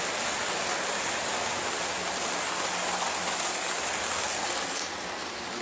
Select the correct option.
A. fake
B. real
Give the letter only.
B